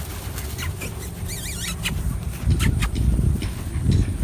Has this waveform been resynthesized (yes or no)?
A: no